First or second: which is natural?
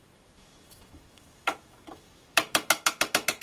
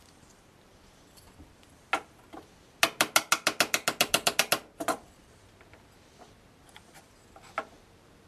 second